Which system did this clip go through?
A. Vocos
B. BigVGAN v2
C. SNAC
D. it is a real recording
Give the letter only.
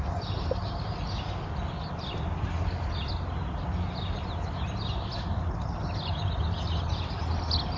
D